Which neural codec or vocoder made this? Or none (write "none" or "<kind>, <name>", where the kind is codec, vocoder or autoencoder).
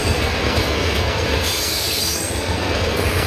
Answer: codec, SNAC